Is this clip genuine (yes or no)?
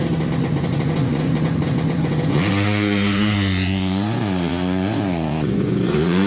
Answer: no